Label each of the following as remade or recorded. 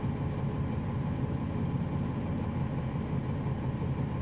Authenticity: recorded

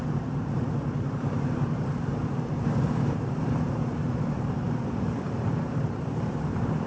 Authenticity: remade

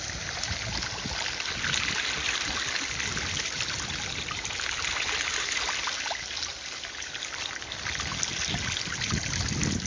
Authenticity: recorded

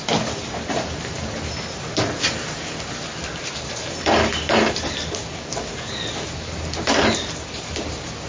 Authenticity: recorded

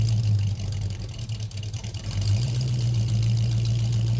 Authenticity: remade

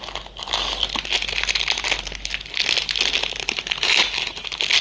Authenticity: recorded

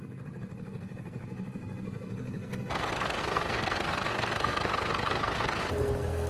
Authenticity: remade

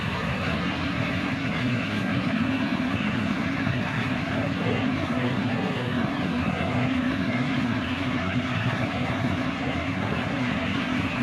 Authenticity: remade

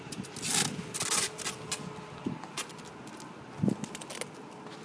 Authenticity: recorded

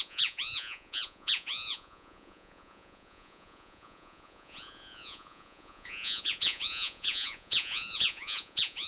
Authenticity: remade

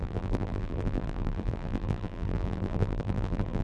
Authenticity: remade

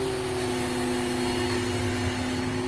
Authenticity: recorded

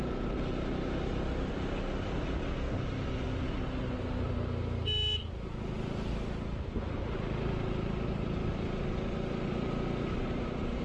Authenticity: recorded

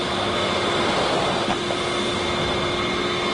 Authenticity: recorded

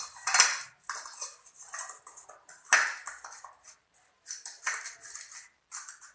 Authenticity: recorded